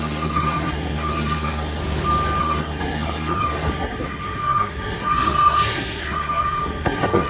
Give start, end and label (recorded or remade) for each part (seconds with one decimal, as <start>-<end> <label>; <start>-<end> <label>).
0.0-1.8 remade; 1.8-2.4 recorded; 2.4-7.3 remade